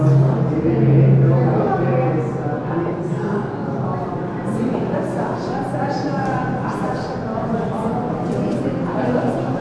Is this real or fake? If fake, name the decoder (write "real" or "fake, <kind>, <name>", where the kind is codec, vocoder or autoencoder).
real